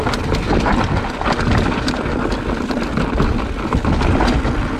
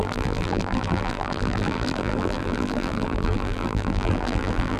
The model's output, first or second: second